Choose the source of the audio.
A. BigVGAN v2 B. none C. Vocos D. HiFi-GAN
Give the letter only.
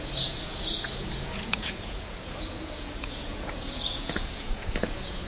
C